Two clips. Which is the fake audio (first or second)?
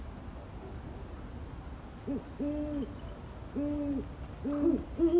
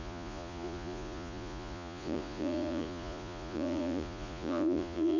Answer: second